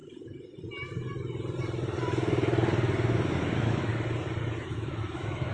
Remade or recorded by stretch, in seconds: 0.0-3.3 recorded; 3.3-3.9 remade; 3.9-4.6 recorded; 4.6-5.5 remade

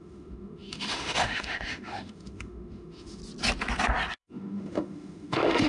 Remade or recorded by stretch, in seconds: 0.0-3.2 remade; 3.2-4.2 recorded; 4.2-5.7 remade

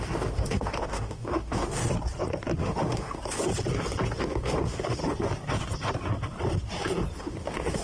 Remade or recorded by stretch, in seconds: 0.0-1.8 remade; 1.8-2.6 recorded; 2.6-3.2 remade; 3.2-4.2 recorded; 4.2-5.0 remade; 5.0-7.2 recorded; 7.2-7.8 remade

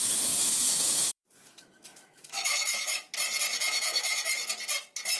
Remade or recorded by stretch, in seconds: 0.0-3.1 remade; 3.1-3.5 recorded; 3.5-4.3 remade; 4.3-5.2 recorded

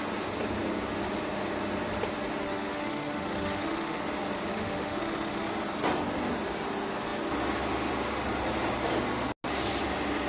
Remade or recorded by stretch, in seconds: 0.0-2.4 recorded; 2.4-4.0 remade; 4.0-4.5 recorded; 4.5-5.5 remade; 5.5-10.3 recorded